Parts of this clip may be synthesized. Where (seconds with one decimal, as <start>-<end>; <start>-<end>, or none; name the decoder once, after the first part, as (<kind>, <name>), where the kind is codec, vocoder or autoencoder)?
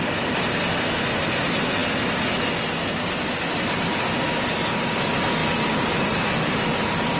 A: none